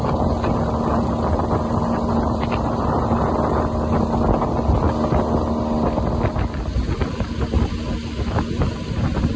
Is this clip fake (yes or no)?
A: no